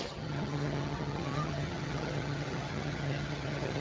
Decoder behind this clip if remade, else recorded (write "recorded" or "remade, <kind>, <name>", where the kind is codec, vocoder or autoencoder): remade, vocoder, HiFi-GAN